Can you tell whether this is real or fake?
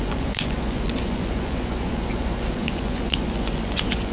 fake